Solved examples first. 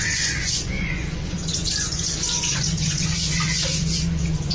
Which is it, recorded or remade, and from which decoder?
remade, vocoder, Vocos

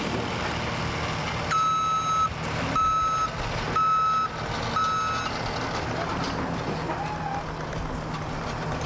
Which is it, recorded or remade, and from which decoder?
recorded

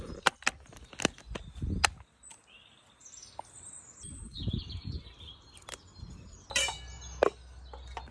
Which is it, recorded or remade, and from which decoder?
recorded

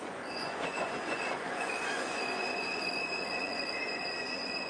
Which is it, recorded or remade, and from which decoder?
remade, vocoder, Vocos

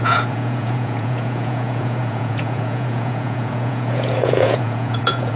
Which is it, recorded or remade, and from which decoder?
remade, vocoder, Vocos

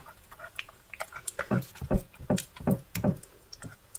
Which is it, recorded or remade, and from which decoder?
remade, vocoder, Vocos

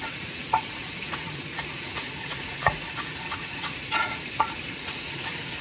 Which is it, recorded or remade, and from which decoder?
remade, vocoder, Vocos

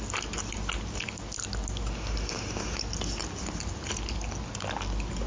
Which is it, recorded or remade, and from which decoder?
recorded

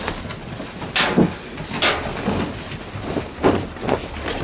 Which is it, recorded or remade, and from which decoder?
recorded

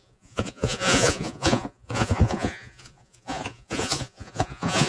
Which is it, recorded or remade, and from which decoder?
remade, vocoder, Vocos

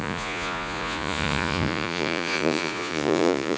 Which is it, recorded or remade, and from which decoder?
remade, vocoder, Vocos